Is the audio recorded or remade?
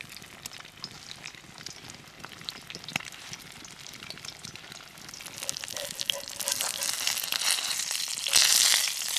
recorded